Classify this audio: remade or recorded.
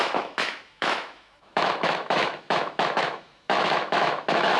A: remade